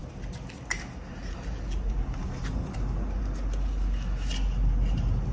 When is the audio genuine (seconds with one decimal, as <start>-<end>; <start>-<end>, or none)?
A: 0.0-5.3